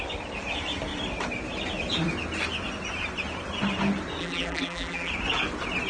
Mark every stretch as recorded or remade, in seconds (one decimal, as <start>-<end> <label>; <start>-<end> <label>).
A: 0.0-4.2 recorded; 4.2-5.1 remade; 5.1-5.9 recorded